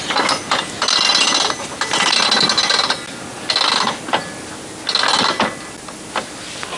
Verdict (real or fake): real